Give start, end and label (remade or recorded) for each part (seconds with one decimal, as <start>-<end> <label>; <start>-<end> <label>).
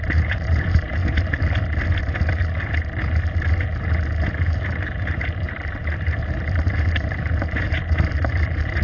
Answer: 0.0-1.0 remade; 1.0-4.3 recorded; 4.3-8.8 remade